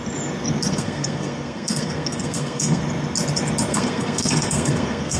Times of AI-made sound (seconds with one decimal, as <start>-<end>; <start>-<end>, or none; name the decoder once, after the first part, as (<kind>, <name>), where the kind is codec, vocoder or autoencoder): 0.7-2.8 (codec, SNAC); 3.7-5.2